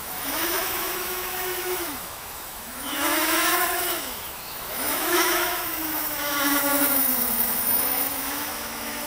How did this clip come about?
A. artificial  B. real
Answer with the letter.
A